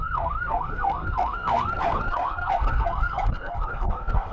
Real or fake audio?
fake